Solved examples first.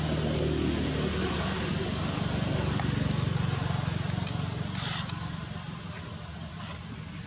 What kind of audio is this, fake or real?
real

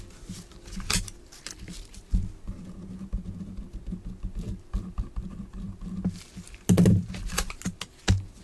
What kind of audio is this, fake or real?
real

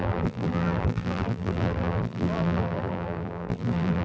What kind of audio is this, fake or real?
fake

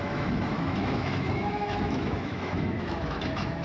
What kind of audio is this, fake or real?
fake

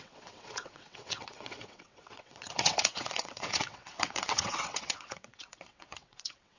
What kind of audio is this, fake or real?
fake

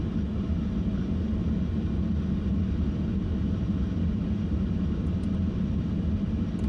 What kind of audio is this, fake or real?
real